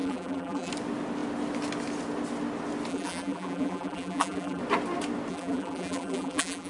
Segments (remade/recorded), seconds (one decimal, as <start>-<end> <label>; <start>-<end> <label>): 0.0-0.7 remade; 0.7-2.9 recorded; 2.9-4.6 remade; 4.6-5.3 recorded; 5.3-6.7 remade